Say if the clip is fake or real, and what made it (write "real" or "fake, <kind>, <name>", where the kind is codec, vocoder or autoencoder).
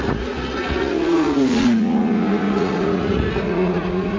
fake, vocoder, Vocos